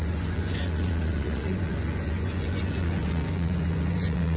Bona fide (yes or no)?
no